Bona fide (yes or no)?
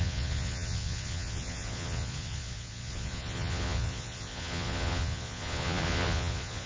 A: no